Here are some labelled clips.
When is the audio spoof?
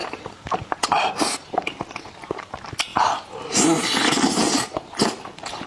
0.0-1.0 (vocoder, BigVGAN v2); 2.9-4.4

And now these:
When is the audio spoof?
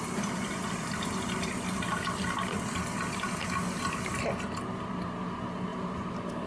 none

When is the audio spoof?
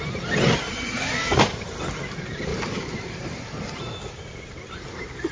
2.5-3.9 (vocoder, BigVGAN v2)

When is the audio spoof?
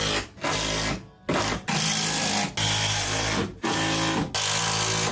none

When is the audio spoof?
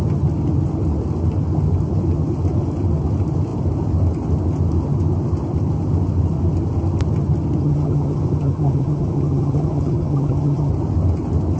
7.6-10.7 (vocoder, HiFi-GAN)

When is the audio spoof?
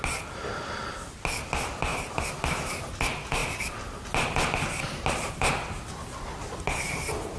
none